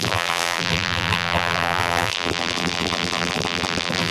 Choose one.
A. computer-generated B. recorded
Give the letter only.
A